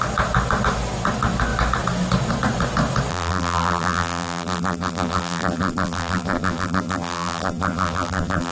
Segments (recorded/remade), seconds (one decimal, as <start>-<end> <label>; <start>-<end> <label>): 0.0-3.1 recorded; 3.1-8.5 remade